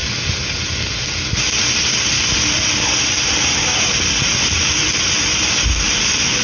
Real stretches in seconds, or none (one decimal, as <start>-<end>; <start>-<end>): 0.0-6.4